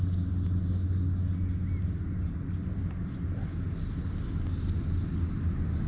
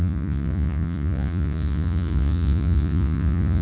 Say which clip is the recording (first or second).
first